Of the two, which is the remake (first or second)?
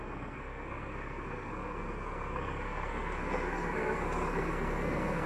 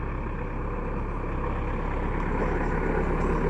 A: first